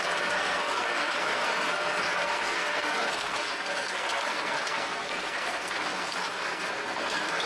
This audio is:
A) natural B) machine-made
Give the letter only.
B